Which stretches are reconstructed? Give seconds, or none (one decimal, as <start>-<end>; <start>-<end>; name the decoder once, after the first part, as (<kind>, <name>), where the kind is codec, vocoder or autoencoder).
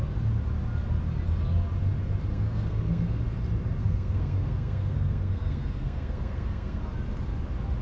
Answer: 2.3-3.2 (codec, SNAC); 3.8-6.8